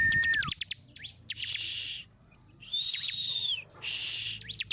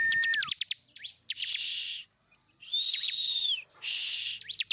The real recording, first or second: second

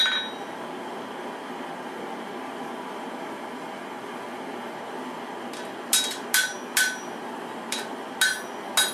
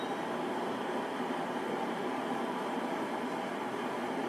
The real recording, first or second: first